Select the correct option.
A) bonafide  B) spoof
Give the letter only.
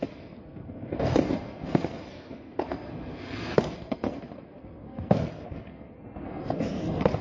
B